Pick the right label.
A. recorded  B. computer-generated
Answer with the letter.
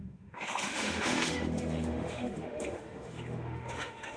B